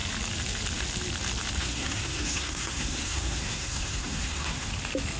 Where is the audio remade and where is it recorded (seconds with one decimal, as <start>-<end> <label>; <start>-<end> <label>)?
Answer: 0.0-1.6 recorded; 1.6-4.7 remade; 4.7-5.2 recorded

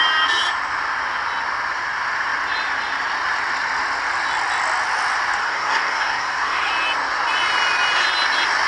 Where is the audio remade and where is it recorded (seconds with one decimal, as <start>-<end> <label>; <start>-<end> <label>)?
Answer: 0.0-5.4 recorded; 5.4-6.7 remade; 6.7-8.7 recorded

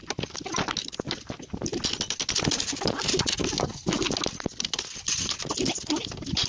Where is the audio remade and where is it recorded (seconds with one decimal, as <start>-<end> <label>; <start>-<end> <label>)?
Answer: 0.0-6.5 recorded